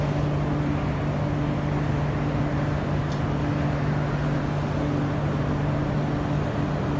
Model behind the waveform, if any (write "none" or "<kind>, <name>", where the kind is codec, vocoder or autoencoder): none